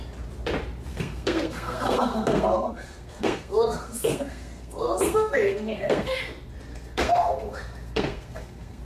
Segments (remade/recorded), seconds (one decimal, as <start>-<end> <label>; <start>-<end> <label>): 0.0-0.9 recorded; 0.9-6.2 remade; 6.2-6.7 recorded; 6.7-8.8 remade

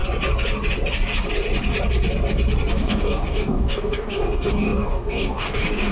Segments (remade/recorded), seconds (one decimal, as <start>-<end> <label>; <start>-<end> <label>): 0.0-2.7 recorded; 2.7-5.9 remade

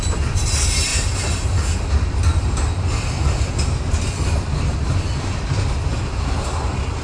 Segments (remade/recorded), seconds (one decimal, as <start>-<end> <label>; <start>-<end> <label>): 0.0-7.0 recorded

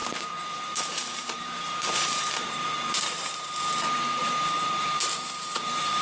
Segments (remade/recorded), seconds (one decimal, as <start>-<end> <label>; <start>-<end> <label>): 0.0-3.6 remade; 3.6-4.2 recorded; 4.2-6.0 remade

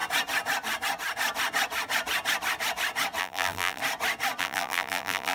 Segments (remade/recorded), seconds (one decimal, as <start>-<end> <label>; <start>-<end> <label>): 0.0-3.2 recorded; 3.2-3.8 remade; 3.8-4.4 recorded; 4.4-5.3 remade

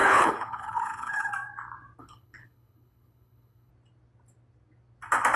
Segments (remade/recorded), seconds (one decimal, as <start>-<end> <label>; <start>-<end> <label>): 0.0-1.3 remade; 1.3-2.0 recorded; 2.0-3.7 remade; 3.7-5.4 recorded

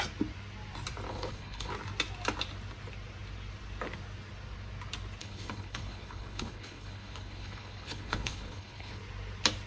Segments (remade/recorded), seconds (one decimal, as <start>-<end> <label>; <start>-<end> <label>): 0.0-1.1 recorded; 1.1-1.7 remade; 1.7-5.2 recorded; 5.2-9.0 remade; 9.0-9.7 recorded

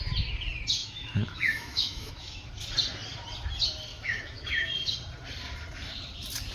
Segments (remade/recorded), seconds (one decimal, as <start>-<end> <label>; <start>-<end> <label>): 0.0-0.8 recorded; 0.8-2.5 remade; 2.5-3.9 recorded; 3.9-4.7 remade; 4.7-6.5 recorded